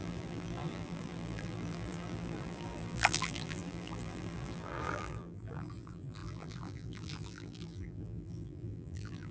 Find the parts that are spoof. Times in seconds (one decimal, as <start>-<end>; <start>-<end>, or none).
0.0-9.3